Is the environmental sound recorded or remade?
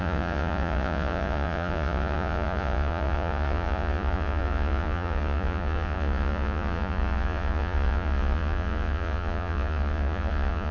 remade